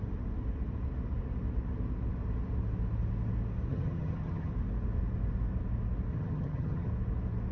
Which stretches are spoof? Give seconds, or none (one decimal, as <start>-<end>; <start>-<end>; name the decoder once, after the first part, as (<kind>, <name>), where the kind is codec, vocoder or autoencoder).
3.7-4.5 (vocoder, HiFi-GAN); 6.1-6.9